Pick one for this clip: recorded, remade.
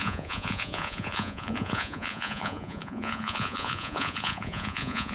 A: remade